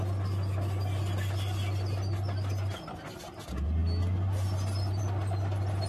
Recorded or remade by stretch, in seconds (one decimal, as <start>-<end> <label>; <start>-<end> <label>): 0.0-5.9 recorded